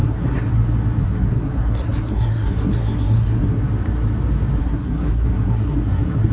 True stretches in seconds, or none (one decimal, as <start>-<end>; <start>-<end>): 0.5-1.0; 3.6-4.6